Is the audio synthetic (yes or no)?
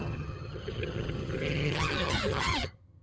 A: yes